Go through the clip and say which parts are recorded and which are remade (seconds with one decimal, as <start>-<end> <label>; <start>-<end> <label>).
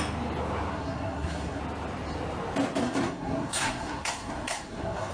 0.0-0.7 recorded; 0.7-1.6 remade; 1.6-2.8 recorded; 2.8-5.1 remade